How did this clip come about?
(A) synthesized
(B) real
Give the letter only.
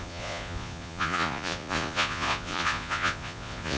A